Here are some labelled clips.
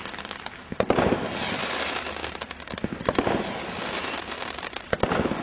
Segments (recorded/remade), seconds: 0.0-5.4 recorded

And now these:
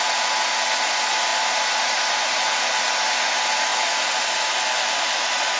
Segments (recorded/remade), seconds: 0.0-5.6 recorded

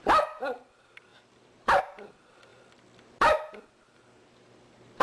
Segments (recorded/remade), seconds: 0.0-2.5 remade; 2.5-3.5 recorded; 3.5-5.0 remade

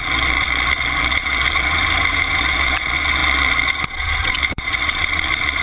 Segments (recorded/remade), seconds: 0.0-1.8 remade; 1.8-2.4 recorded; 2.4-5.6 remade

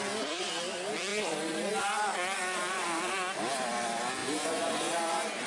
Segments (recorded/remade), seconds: 0.0-1.1 recorded; 1.1-1.7 remade; 1.7-2.1 recorded; 2.1-3.4 remade; 3.4-4.2 recorded; 4.2-5.5 remade

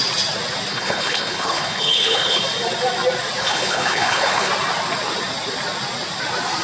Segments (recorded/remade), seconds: 0.0-0.7 recorded; 0.7-2.4 remade; 2.4-3.4 recorded; 3.4-4.5 remade; 4.5-6.6 recorded